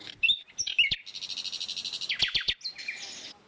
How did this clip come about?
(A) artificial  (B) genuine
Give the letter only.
B